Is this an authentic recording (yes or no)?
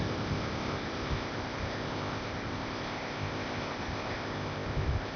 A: no